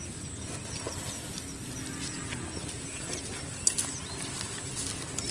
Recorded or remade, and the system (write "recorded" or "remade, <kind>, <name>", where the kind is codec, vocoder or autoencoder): recorded